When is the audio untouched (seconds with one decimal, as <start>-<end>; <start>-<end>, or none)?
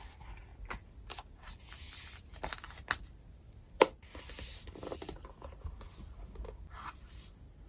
0.0-7.7